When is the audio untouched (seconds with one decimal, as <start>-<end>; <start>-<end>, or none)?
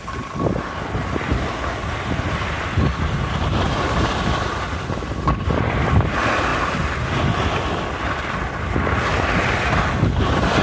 0.0-10.6